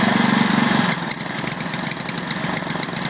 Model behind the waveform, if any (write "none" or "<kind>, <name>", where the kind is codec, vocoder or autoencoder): none